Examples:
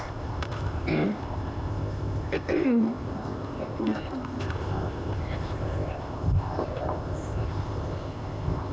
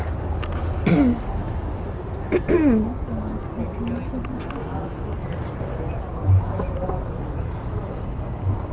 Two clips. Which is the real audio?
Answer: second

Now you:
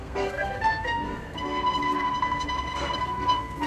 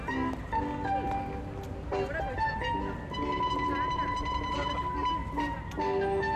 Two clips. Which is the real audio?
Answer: second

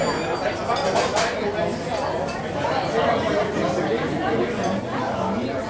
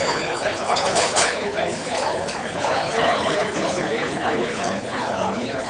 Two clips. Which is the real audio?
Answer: first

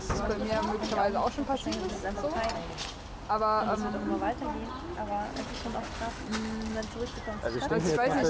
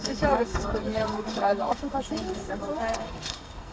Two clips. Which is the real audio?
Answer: first